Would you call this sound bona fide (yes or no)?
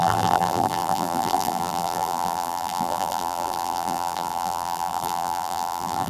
no